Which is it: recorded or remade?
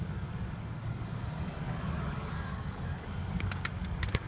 remade